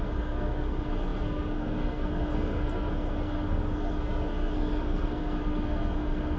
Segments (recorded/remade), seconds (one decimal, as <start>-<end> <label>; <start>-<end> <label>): 0.0-6.4 remade